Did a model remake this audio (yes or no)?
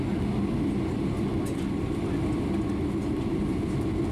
no